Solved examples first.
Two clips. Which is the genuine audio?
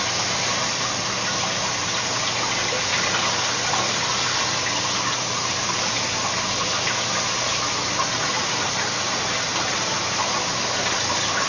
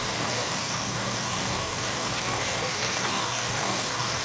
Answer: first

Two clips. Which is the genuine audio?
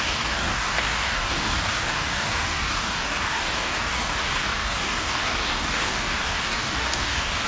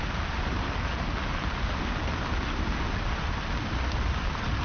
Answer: second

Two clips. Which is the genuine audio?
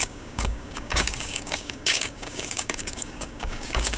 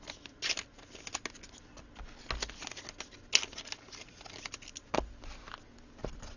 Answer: second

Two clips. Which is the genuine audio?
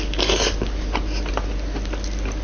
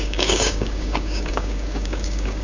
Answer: first